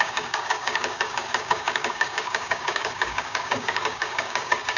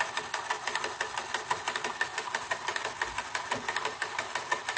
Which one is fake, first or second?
first